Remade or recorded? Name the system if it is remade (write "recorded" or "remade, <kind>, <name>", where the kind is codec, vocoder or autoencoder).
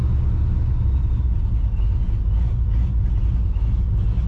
recorded